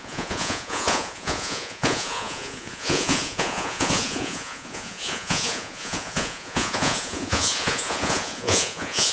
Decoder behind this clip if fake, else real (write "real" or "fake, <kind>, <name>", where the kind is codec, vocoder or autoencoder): fake, vocoder, Vocos